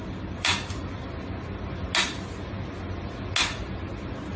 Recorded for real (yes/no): yes